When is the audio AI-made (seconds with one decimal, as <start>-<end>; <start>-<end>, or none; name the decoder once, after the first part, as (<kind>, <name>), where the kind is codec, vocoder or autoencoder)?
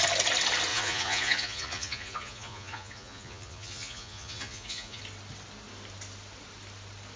0.7-5.0 (vocoder, Vocos)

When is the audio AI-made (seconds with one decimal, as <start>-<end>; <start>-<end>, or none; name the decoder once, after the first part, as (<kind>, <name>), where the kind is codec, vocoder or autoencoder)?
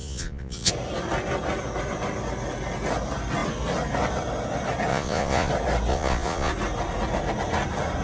0.0-0.7 (vocoder, Vocos); 4.9-5.5; 5.9-6.5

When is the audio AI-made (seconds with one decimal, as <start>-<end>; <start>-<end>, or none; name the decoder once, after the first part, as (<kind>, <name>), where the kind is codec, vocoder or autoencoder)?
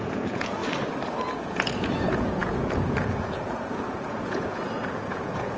0.0-0.6 (vocoder, Vocos); 1.2-5.6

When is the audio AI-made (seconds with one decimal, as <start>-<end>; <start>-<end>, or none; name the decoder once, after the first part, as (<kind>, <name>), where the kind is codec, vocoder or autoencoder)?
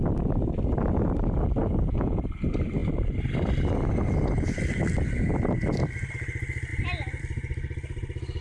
1.6-2.2 (vocoder, Vocos)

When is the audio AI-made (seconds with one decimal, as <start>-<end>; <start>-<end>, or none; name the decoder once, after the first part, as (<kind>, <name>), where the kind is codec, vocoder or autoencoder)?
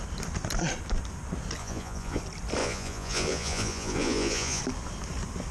1.6-2.2 (vocoder, Vocos); 2.6-4.6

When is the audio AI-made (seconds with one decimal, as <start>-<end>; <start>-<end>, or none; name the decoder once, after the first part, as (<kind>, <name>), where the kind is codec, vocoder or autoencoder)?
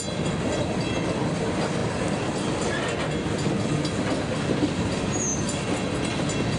none